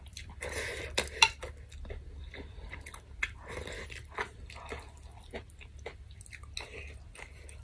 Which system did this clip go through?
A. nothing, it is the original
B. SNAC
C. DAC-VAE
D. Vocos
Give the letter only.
A